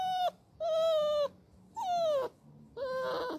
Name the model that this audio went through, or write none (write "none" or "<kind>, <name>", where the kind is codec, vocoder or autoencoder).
none